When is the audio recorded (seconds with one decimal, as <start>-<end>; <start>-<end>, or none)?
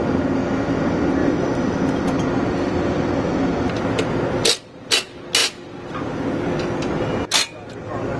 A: 0.0-1.2; 3.7-8.2